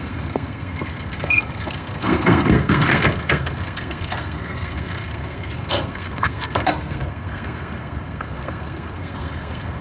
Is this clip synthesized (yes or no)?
yes